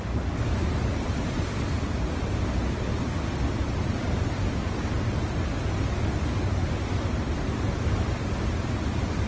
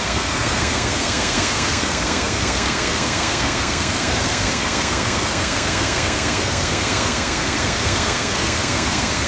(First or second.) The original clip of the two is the first